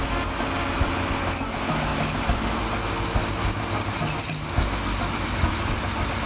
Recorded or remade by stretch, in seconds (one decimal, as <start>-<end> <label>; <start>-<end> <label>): 0.0-6.3 recorded